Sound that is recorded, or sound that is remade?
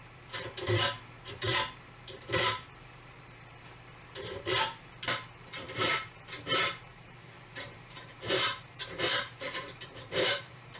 remade